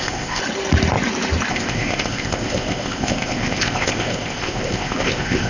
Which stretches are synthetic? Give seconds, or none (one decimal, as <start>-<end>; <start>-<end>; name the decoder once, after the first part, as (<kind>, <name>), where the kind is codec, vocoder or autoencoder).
0.0-0.4 (codec, ZipCodec); 1.5-5.5